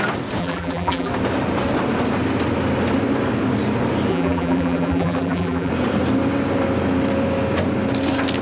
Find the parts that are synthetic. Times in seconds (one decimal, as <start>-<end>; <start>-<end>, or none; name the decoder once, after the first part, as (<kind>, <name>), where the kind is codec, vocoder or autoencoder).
0.4-1.1 (vocoder, BigVGAN v2); 4.1-5.7